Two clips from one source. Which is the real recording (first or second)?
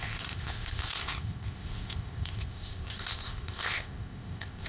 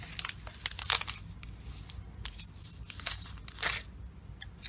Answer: second